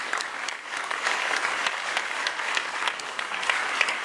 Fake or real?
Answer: fake